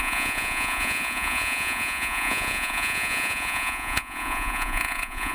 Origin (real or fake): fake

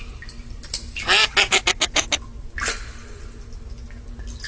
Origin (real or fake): real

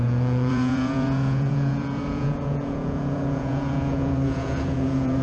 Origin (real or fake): fake